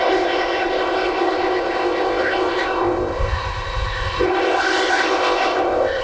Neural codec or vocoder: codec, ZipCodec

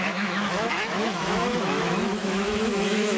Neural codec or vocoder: autoencoder, DAC-VAE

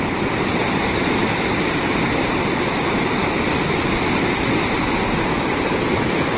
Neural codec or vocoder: none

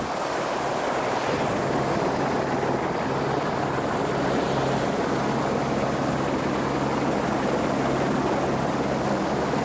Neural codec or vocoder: none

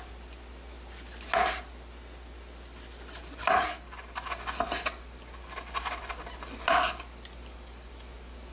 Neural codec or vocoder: none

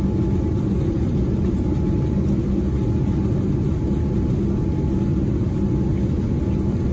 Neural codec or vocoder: none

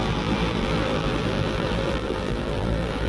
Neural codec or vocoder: vocoder, BigVGAN v2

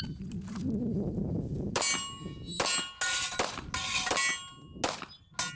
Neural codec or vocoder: none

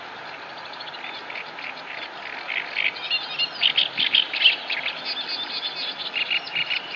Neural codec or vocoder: none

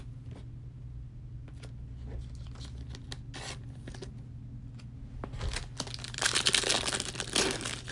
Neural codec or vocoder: none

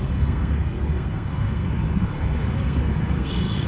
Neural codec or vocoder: codec, SNAC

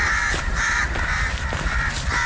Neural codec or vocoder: none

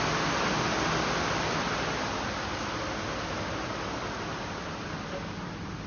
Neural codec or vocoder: none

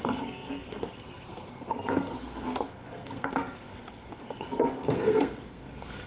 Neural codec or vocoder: codec, SNAC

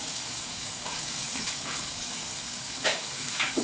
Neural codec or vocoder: codec, DAC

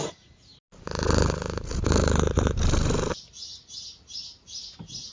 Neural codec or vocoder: none